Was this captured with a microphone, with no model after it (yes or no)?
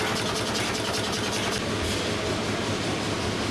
yes